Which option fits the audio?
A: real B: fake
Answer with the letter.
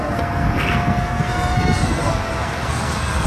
B